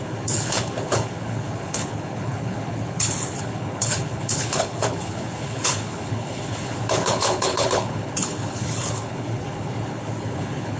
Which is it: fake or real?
fake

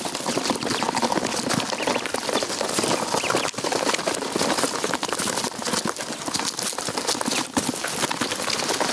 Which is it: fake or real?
real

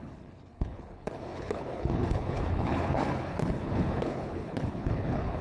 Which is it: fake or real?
fake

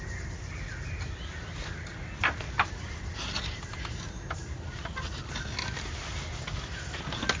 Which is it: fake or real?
real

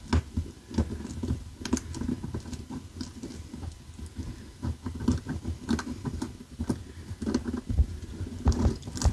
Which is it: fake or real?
real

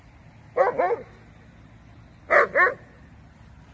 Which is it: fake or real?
real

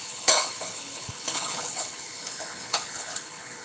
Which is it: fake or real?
fake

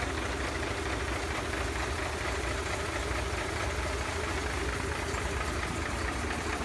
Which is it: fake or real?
real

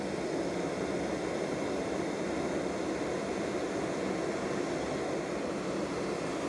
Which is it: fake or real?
real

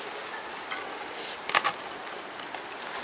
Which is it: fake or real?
real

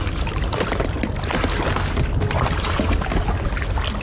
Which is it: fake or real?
real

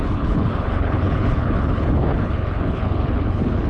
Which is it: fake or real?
fake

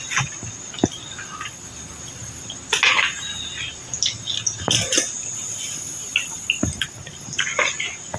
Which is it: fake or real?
real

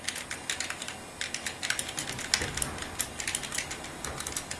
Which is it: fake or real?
real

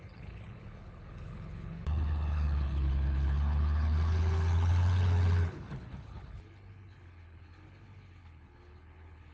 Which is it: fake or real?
fake